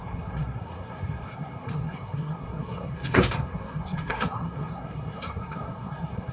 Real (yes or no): no